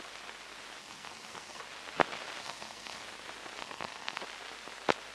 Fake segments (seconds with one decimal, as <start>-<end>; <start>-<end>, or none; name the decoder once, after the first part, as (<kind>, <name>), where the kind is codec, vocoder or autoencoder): 0.8-1.6 (codec, SNAC); 2.4-3.0; 3.6-4.2